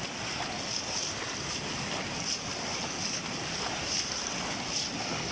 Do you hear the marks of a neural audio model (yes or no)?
no